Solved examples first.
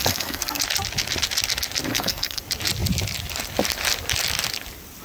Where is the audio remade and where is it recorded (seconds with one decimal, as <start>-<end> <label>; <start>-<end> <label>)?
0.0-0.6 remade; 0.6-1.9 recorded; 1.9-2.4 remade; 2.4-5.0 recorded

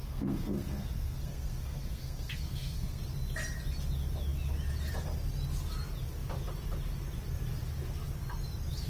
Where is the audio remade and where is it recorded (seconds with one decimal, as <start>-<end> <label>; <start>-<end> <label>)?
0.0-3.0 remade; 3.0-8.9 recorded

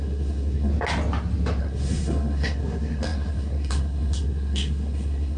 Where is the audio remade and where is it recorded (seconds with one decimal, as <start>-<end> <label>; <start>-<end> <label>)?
0.0-0.7 remade; 0.7-1.6 recorded; 1.6-5.4 remade